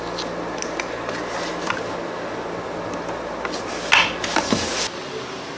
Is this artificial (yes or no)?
no